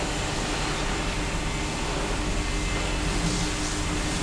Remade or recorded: recorded